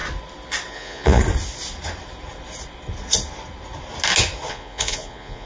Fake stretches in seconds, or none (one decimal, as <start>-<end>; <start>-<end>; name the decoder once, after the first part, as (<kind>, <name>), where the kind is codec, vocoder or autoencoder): 0.7-1.2 (vocoder, Vocos); 4.5-5.5